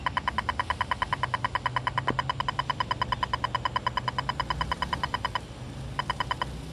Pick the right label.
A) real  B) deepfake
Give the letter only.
A